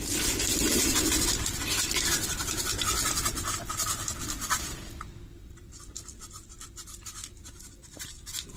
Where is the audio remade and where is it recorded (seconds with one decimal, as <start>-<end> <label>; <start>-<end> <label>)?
0.0-8.6 recorded